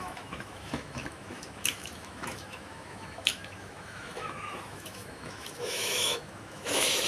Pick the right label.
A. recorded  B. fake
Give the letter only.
B